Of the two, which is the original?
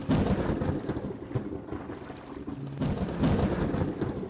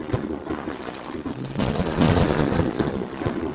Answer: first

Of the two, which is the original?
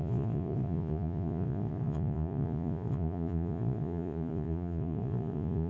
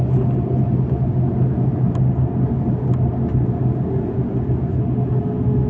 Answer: second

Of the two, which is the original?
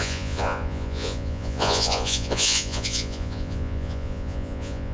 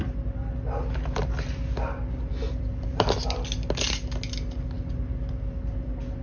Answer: second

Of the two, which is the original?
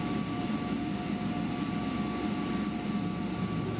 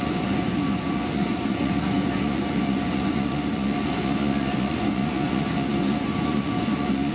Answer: first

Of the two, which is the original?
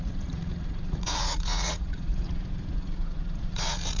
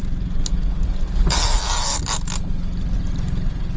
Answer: second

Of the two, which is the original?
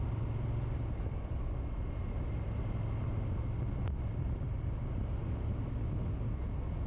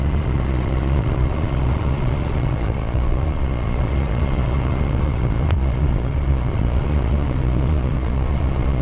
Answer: first